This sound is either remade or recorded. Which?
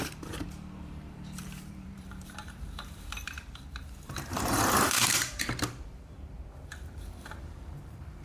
remade